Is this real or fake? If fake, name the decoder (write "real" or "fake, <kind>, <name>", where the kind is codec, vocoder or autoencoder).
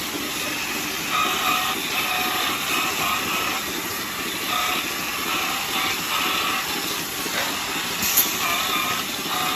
real